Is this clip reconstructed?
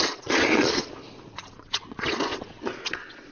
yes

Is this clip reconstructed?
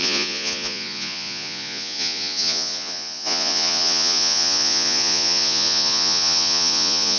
yes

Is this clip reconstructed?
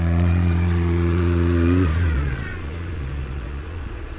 yes